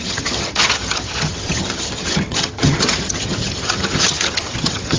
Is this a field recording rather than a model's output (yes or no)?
no